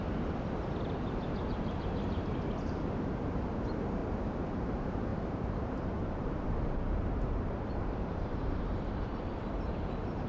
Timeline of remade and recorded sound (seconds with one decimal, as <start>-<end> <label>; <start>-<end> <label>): 0.0-1.4 recorded; 1.4-4.0 remade; 4.0-4.6 recorded; 4.6-10.3 remade

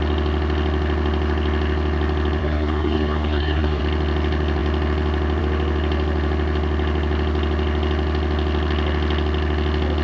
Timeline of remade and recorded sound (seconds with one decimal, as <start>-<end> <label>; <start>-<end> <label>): 0.0-2.4 recorded; 2.4-3.8 remade; 3.8-10.0 recorded

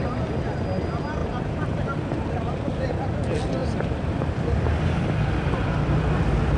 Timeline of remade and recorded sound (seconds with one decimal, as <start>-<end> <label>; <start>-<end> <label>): 0.0-3.6 recorded; 3.6-5.7 remade; 5.7-6.6 recorded

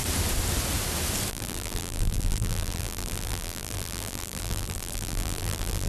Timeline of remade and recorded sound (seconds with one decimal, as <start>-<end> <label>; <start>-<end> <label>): 0.0-1.3 recorded; 1.3-5.9 remade